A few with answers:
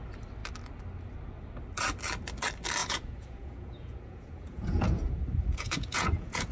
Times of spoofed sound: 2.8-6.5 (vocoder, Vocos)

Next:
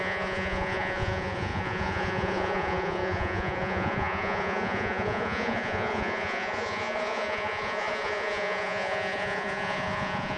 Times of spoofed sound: 0.0-10.4 (vocoder, Vocos)

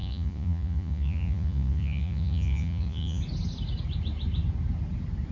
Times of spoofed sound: 0.0-3.2 (vocoder, Vocos)